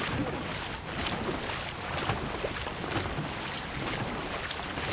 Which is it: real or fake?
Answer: real